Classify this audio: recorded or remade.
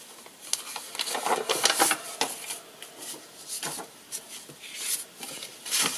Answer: recorded